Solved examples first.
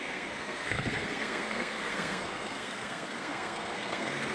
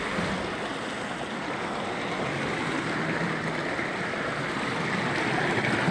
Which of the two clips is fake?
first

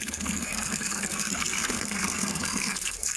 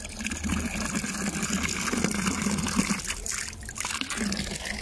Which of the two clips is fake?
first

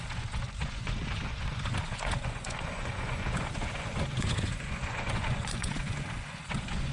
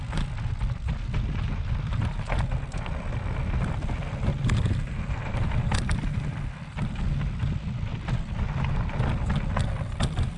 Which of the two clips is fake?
first